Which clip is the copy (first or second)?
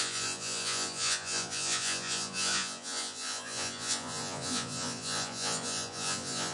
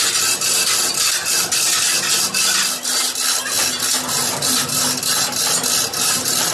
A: first